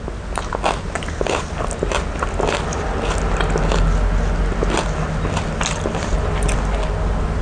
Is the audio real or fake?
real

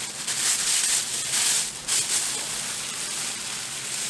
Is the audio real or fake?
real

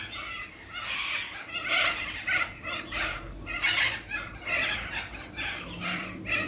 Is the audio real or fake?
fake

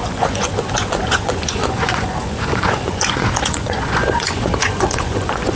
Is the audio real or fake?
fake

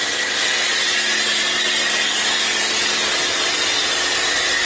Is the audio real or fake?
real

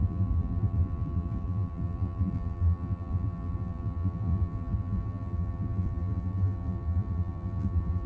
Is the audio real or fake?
fake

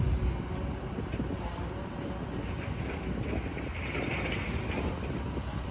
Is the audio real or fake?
real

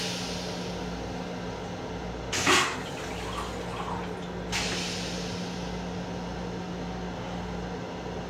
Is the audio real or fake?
real